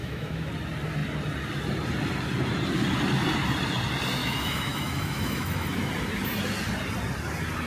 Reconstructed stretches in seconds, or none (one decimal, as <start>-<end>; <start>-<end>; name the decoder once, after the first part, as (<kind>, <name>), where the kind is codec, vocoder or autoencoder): 0.0-0.5 (autoencoder, DAC-VAE); 4.2-5.9